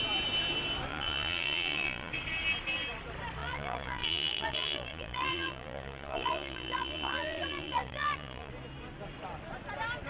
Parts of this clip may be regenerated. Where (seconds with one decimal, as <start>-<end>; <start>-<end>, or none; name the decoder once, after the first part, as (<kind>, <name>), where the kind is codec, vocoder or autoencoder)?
0.9-2.1 (vocoder, Vocos); 3.4-8.5